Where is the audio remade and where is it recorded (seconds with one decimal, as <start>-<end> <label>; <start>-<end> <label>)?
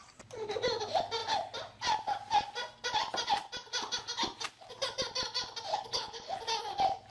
0.0-5.7 recorded; 5.7-6.4 remade; 6.4-7.1 recorded